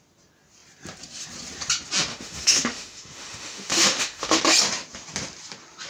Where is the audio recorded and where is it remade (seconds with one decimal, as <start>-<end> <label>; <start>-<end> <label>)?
0.0-2.1 recorded; 2.1-4.4 remade; 4.4-5.9 recorded